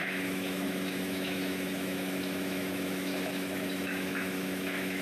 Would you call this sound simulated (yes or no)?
yes